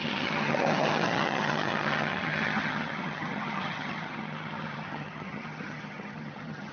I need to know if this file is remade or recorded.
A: remade